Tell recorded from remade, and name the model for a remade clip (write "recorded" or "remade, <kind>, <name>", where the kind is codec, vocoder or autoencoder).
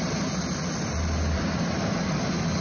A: recorded